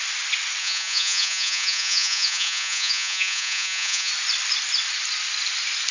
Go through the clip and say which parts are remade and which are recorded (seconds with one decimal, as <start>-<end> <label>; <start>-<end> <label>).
0.0-0.6 recorded; 0.6-4.1 remade; 4.1-5.9 recorded